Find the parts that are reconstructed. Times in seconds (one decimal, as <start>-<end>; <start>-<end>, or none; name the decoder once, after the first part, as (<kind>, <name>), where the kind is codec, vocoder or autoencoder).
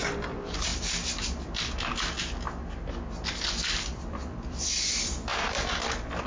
0.0-1.9 (vocoder, BigVGAN v2); 3.3-6.3